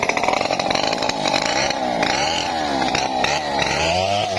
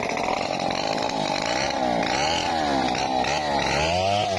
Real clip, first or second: second